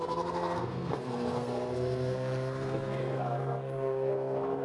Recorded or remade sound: remade